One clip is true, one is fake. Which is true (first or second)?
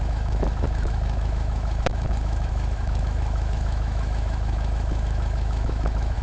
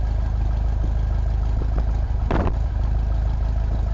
second